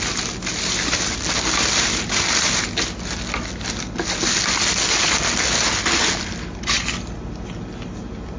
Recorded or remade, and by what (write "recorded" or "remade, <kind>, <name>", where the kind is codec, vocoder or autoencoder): recorded